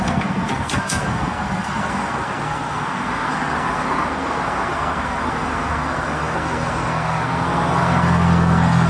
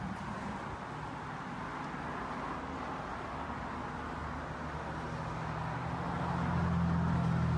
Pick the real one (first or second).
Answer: second